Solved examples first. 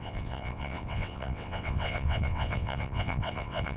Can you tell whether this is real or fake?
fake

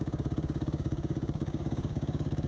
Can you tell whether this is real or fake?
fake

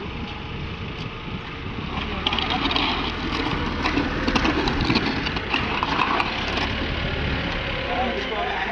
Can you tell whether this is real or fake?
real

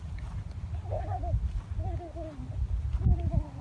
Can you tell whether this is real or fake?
real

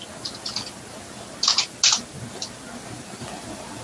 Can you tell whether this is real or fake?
real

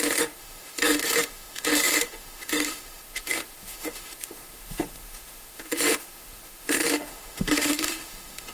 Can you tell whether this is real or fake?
fake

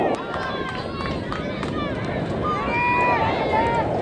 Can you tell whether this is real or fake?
real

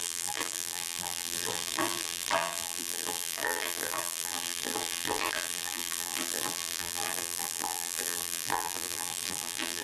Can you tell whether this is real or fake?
fake